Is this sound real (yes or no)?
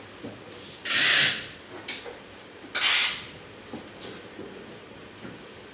yes